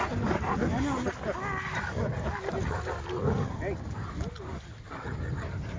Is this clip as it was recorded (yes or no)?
yes